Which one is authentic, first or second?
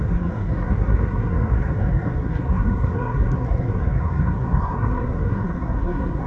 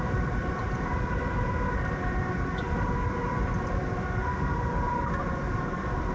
second